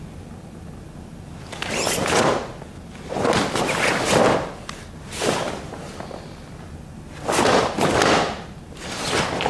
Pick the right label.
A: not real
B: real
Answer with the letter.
B